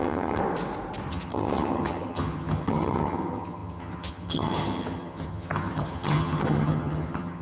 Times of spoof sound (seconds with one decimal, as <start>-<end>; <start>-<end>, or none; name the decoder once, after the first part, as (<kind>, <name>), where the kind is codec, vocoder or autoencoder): 0.0-0.4 (vocoder, HiFi-GAN); 1.1-7.4